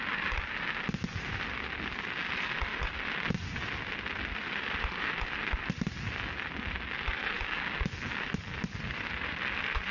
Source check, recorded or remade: recorded